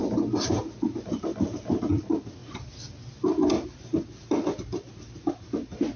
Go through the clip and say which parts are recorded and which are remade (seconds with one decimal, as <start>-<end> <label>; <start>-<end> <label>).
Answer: 0.0-6.0 recorded